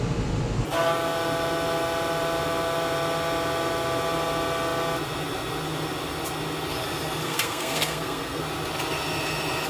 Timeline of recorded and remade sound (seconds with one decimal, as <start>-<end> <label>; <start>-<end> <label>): 0.0-7.2 recorded; 7.2-8.4 remade; 8.4-9.7 recorded